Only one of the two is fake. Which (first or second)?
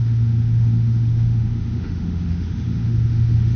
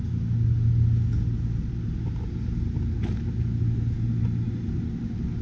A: first